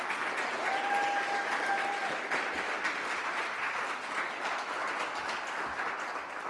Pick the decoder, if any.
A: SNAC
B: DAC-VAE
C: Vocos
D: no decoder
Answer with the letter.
D